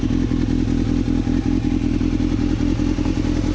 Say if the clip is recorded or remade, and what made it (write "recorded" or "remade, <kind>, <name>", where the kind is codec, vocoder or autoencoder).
recorded